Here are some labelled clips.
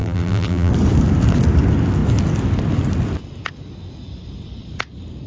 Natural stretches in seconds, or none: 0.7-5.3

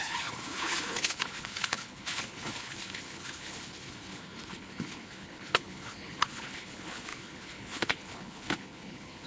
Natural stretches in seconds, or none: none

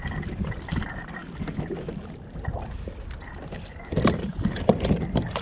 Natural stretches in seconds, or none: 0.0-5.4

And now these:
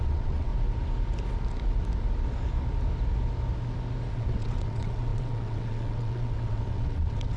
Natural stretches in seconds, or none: 0.5-4.1

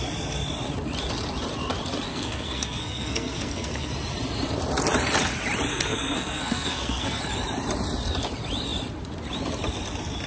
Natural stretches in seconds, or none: 0.0-2.1; 3.9-5.7; 7.2-10.3

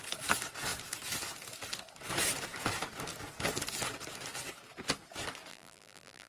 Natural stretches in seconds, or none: 0.0-5.5

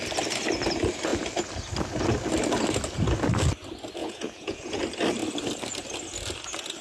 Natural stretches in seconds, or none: 0.0-4.0; 4.8-6.8

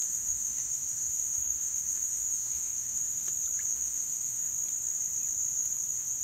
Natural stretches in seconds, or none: 3.3-3.7; 4.5-6.2